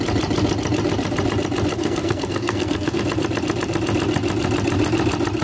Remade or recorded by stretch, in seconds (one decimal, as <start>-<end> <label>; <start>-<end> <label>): 0.0-1.7 recorded; 1.7-3.0 remade; 3.0-5.4 recorded